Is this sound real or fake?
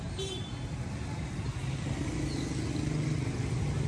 real